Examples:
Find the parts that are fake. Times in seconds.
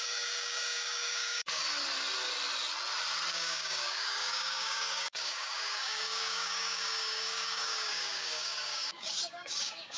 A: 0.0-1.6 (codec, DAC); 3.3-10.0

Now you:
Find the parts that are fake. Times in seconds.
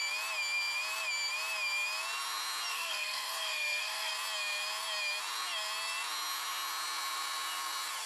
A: 2.7-4.1 (codec, SNAC)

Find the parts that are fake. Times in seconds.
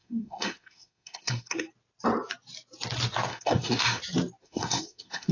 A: 0.0-1.6 (codec, SNAC); 3.3-4.0; 4.4-5.3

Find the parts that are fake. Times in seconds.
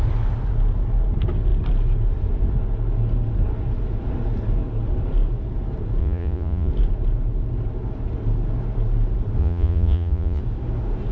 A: 6.0-6.7 (vocoder, Vocos); 9.4-10.4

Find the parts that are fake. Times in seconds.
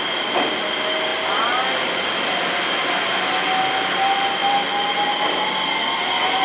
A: none